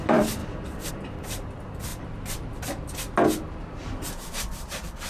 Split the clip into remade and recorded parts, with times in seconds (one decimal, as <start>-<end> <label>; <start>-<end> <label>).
0.0-1.9 remade; 1.9-3.6 recorded; 3.6-5.1 remade